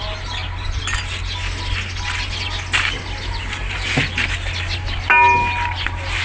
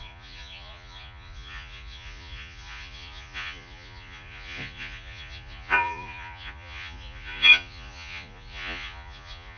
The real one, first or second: first